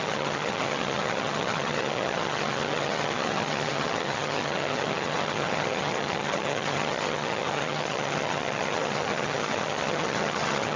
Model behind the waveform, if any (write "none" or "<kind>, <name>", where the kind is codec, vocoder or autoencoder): vocoder, HiFi-GAN